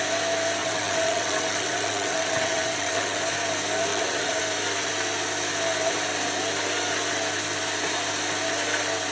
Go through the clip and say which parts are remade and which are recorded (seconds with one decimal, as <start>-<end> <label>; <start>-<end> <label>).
0.0-0.6 recorded; 0.6-3.2 remade; 3.2-3.9 recorded; 3.9-4.4 remade; 4.4-9.1 recorded